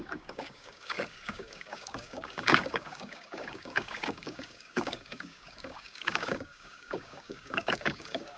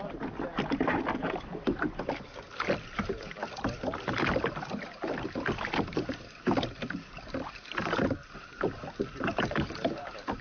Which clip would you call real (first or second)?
second